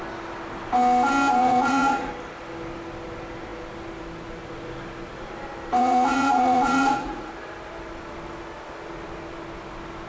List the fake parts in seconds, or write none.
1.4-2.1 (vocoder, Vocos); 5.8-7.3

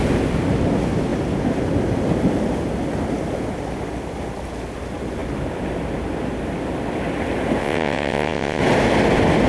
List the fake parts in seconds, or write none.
7.6-8.6 (vocoder, WaveNeXt)

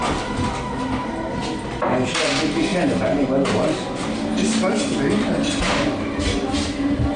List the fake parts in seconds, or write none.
none

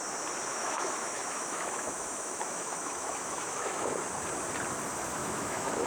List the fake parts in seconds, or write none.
0.5-4.0 (autoencoder, DAC-VAE); 5.2-5.9

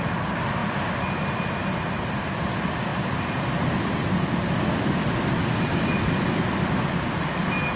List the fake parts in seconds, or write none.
none

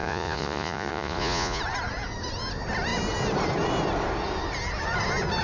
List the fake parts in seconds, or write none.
0.0-1.6 (vocoder, Vocos)

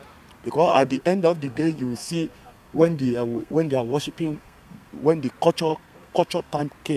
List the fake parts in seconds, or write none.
0.7-4.9 (codec, SNAC); 5.7-6.6